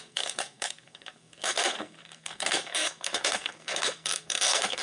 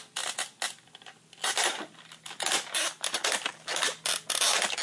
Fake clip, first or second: first